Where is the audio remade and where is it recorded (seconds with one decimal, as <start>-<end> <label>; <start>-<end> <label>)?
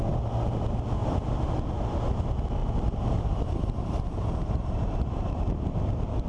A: 0.0-2.6 recorded; 2.6-5.4 remade; 5.4-6.3 recorded